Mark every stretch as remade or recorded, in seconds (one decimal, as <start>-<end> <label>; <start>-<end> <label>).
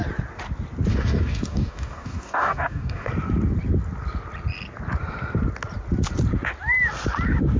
0.0-0.9 recorded; 0.9-3.1 remade; 3.1-7.6 recorded